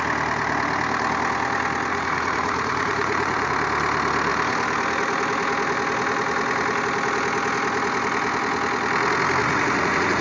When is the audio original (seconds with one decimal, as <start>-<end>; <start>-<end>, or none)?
0.0-1.9; 3.5-9.4